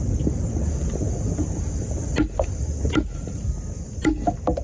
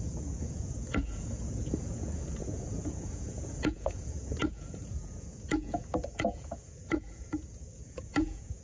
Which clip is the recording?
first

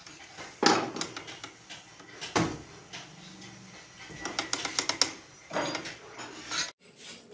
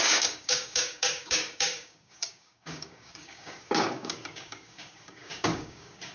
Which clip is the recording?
first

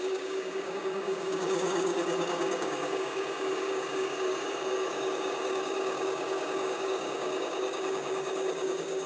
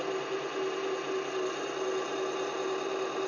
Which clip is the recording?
second